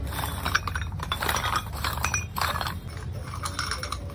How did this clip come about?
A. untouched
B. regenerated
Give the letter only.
A